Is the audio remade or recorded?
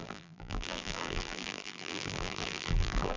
remade